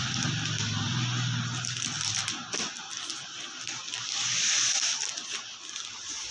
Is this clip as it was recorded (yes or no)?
yes